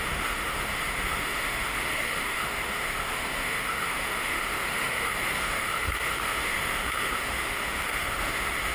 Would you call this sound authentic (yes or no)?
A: no